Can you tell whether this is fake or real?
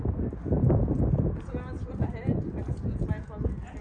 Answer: real